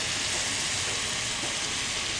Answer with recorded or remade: recorded